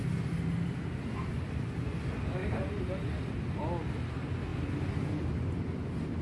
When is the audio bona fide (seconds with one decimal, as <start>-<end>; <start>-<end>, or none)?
0.0-6.2